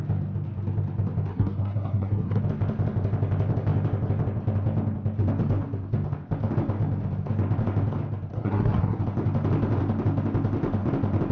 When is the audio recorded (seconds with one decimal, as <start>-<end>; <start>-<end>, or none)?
0.0-1.3; 2.4-8.3; 9.0-11.3